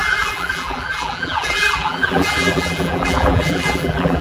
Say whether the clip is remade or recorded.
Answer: remade